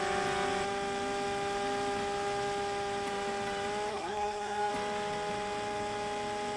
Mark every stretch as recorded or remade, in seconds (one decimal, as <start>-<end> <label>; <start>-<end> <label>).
0.0-3.9 recorded; 3.9-4.7 remade; 4.7-6.6 recorded